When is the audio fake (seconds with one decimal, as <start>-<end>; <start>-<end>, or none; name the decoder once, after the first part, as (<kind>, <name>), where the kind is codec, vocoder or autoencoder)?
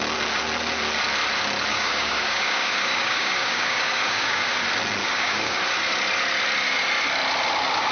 1.7-4.6 (codec, DAC); 5.0-5.6